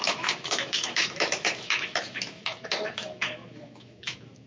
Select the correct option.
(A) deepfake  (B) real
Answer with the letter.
A